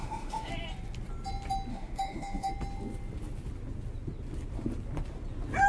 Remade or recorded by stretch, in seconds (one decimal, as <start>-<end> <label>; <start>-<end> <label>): 0.0-0.5 remade; 0.5-1.7 recorded; 1.7-2.5 remade; 2.5-5.7 recorded